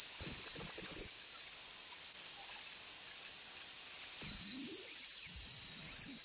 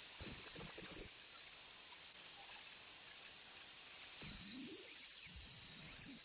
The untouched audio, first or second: first